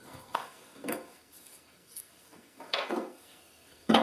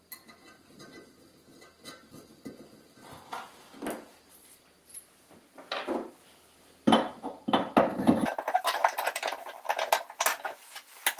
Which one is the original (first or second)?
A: second